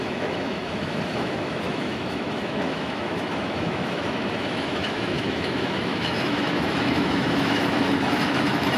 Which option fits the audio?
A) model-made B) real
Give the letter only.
A